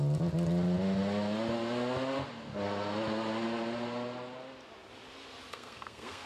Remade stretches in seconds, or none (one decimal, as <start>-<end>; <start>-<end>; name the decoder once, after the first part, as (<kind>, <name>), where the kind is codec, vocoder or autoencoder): 5.5-6.3 (codec, SNAC)